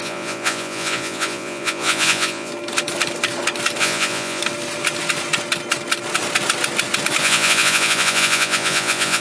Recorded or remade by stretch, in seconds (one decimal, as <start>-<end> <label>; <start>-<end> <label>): 0.0-2.5 remade; 2.5-3.8 recorded; 3.8-4.4 remade; 4.4-7.2 recorded; 7.2-9.2 remade